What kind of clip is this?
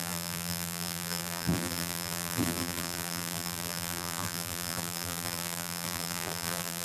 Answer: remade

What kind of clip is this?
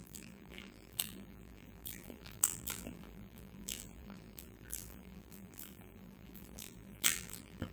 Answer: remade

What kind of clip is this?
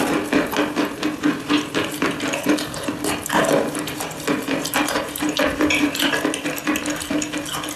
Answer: recorded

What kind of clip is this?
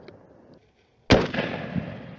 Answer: recorded